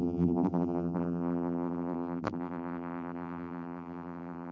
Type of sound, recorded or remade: remade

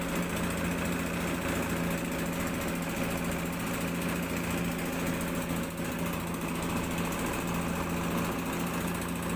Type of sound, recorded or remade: recorded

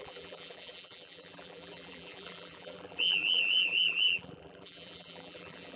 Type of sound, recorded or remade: remade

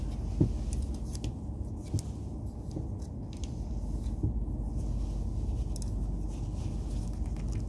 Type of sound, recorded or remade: recorded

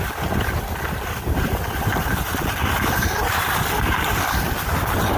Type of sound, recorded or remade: remade